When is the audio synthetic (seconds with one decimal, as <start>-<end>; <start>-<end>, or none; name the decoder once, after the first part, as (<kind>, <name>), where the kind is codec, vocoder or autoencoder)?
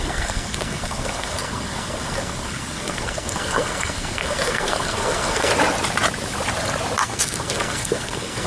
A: 0.0-5.5 (codec, SNAC); 7.0-8.5